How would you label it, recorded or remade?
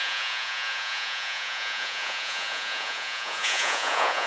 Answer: remade